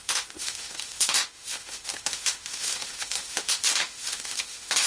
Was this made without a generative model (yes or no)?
no